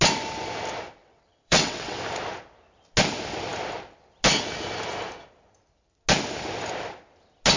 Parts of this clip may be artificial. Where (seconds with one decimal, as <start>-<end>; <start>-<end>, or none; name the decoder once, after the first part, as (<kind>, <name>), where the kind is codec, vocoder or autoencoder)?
1.0-2.0 (vocoder, WaveNeXt)

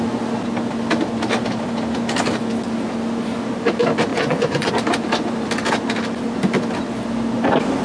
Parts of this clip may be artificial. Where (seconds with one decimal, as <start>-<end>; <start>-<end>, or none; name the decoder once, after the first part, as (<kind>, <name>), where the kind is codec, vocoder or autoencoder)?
4.1-4.7 (vocoder, Vocos)